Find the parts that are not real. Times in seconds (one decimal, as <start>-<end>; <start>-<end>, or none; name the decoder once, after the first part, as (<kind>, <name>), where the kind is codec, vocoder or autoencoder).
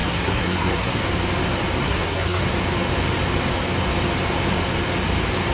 0.0-1.0 (codec, SNAC); 1.8-2.4